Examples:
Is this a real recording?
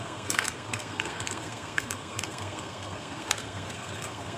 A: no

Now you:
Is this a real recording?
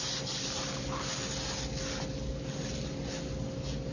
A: yes